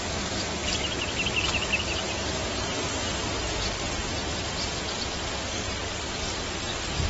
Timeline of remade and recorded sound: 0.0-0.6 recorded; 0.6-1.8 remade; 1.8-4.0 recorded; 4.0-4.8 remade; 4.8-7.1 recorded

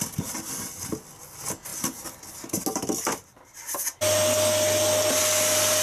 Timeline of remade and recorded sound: 0.0-5.8 recorded

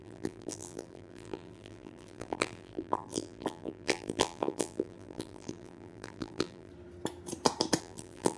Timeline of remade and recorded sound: 0.0-6.7 remade; 6.7-7.8 recorded; 7.8-8.4 remade

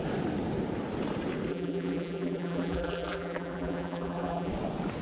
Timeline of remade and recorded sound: 0.0-1.5 recorded; 1.5-4.5 remade; 4.5-5.0 recorded